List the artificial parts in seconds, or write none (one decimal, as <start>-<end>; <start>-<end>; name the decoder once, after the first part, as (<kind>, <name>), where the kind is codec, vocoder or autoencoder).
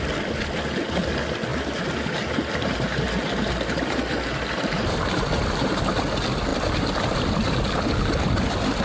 1.5-5.8 (vocoder, BigVGAN v2)